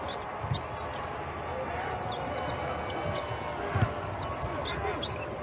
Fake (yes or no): no